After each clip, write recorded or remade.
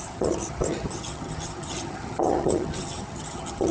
remade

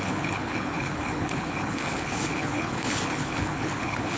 remade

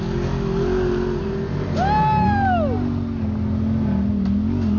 recorded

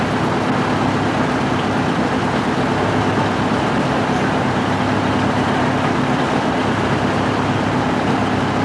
recorded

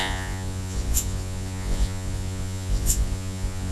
remade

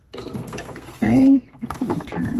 remade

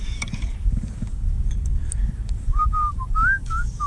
remade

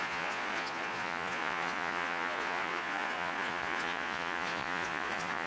remade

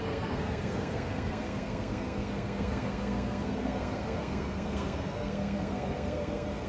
remade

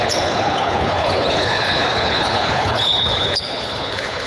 remade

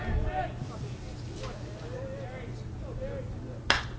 recorded